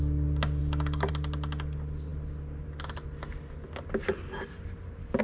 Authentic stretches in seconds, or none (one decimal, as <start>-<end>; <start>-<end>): 0.0-0.6; 1.1-5.2